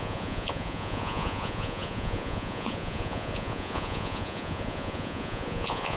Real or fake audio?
fake